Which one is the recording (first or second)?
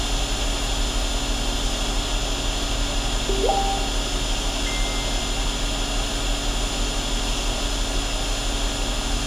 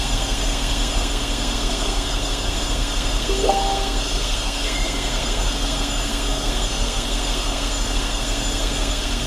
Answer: first